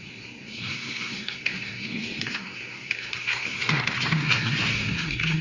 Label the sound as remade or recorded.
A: remade